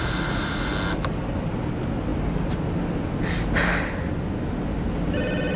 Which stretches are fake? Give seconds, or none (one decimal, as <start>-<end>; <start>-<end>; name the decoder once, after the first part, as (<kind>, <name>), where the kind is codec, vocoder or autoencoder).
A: 0.0-0.7 (vocoder, Vocos)